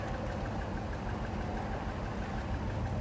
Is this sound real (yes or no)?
yes